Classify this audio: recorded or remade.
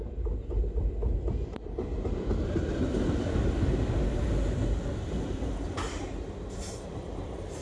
recorded